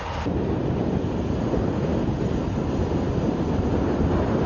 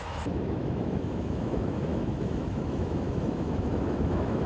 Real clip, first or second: first